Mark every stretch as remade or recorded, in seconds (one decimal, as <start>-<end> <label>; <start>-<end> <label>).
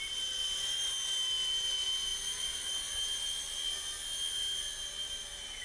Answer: 0.0-5.6 recorded